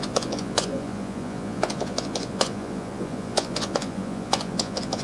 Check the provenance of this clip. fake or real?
fake